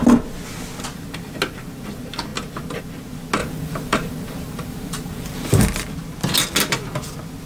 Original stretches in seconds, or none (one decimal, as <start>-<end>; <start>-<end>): 0.0-3.4; 5.6-7.5